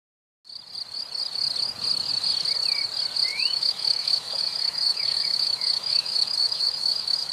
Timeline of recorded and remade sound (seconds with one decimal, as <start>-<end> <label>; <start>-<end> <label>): 0.0-3.3 recorded; 3.3-7.3 remade